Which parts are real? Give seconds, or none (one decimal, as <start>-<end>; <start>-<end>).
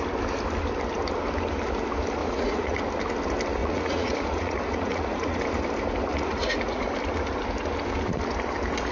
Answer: 0.0-2.2; 2.8-3.6; 5.4-6.1; 6.9-8.9